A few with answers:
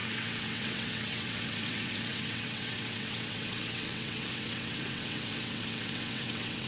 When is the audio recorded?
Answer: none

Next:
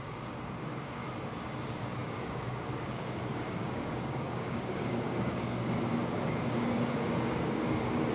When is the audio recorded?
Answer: 1.0-1.6

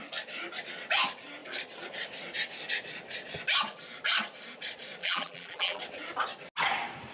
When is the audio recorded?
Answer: 0.0-5.0; 5.8-7.1

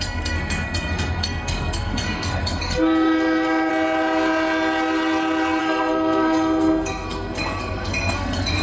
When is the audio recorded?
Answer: 3.7-5.6

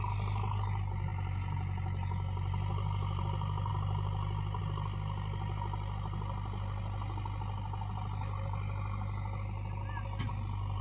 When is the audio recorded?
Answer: 0.0-10.8